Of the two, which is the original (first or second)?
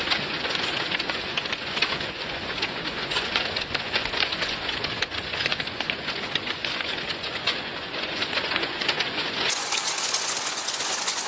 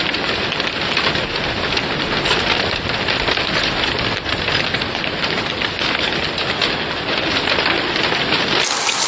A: second